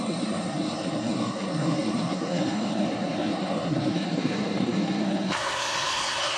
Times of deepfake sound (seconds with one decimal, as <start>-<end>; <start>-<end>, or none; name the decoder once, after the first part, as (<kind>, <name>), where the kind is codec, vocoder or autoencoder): 0.0-6.4 (codec, SNAC)